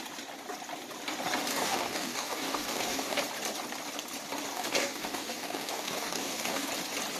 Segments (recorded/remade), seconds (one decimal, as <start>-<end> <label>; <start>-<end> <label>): 0.0-1.5 recorded; 1.5-3.2 remade; 3.2-4.5 recorded; 4.5-6.7 remade; 6.7-7.2 recorded